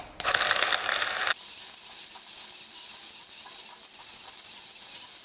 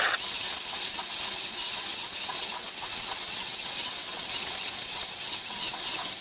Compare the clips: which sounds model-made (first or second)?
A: second